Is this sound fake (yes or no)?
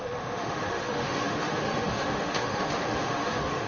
yes